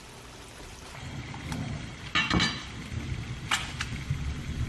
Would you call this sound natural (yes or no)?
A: yes